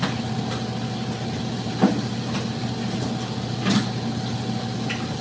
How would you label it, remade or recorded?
recorded